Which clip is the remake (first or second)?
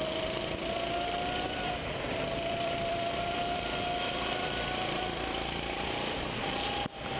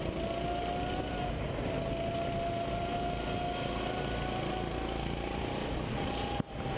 first